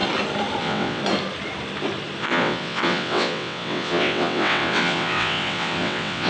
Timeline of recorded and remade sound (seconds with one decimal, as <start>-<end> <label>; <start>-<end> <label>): 0.0-0.6 recorded; 0.6-1.0 remade; 1.0-2.2 recorded; 2.2-6.3 remade